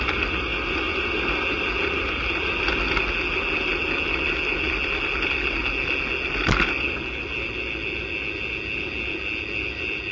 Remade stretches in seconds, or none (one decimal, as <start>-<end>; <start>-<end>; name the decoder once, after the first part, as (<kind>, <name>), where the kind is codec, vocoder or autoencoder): none